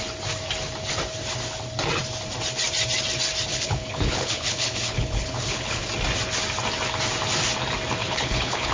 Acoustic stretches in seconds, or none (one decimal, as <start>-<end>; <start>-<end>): 0.0-3.5; 5.9-8.0